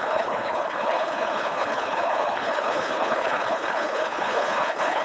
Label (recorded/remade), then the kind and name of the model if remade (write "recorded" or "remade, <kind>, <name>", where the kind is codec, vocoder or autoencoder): remade, codec, HILCodec